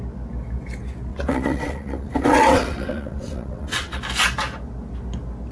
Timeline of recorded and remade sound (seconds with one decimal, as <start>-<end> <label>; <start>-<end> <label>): 0.0-1.1 recorded; 1.1-4.0 remade; 4.0-5.5 recorded